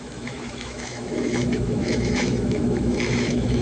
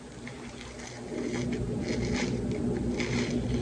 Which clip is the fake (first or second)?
first